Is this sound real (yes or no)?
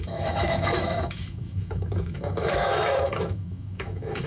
no